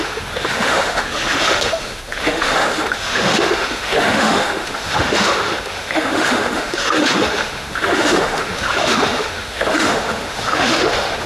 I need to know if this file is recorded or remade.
remade